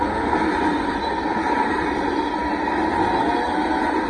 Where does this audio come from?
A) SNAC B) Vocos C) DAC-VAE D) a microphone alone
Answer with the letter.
D